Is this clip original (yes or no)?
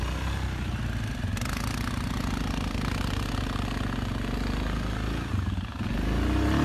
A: yes